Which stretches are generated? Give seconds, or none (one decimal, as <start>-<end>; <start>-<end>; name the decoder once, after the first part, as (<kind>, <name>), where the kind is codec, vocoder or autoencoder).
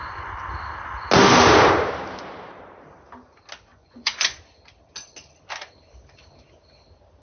3.7-4.4 (vocoder, Vocos)